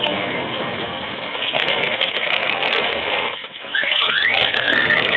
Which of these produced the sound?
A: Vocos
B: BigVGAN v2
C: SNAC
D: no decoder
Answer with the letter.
C